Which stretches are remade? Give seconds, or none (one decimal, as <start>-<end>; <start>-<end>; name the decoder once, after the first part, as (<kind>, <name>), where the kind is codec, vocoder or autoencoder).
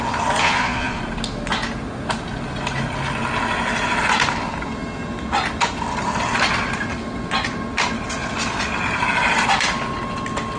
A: 0.4-1.0 (vocoder, Vocos)